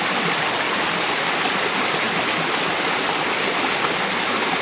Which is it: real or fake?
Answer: real